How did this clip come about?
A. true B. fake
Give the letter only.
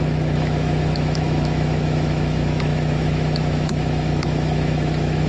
B